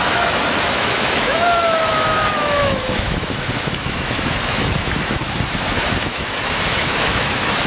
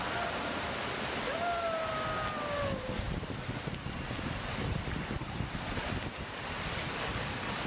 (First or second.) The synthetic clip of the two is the first